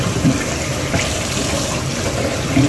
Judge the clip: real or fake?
real